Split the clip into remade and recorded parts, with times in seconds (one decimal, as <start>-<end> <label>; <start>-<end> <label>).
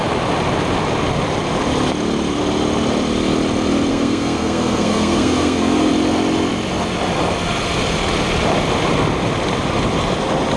0.0-3.9 recorded; 3.9-5.9 remade; 5.9-10.6 recorded